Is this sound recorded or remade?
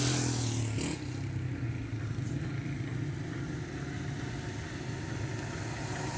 recorded